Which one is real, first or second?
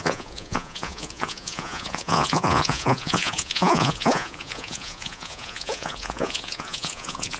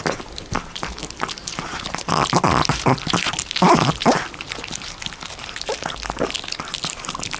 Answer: second